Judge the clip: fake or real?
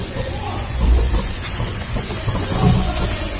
fake